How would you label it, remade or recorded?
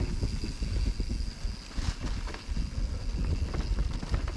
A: recorded